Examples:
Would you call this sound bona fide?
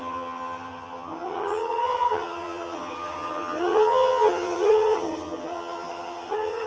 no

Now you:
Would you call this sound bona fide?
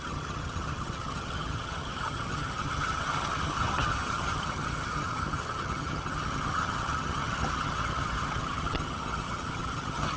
no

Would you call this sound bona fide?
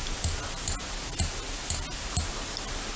yes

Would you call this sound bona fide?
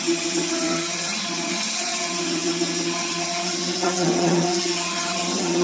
no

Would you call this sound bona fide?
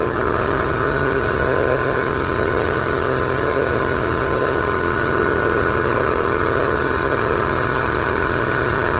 no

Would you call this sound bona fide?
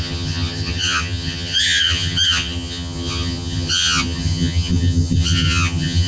no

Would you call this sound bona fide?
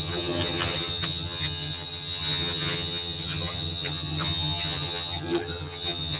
no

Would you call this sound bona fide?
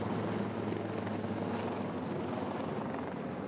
yes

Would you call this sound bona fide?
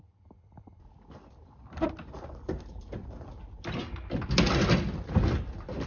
yes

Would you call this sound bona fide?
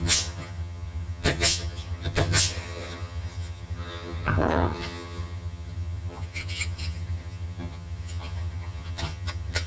no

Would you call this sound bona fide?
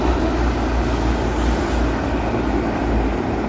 yes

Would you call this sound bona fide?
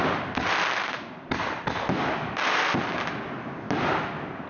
yes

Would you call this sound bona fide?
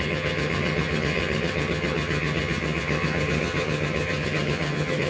no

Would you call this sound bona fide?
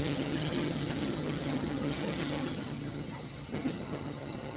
no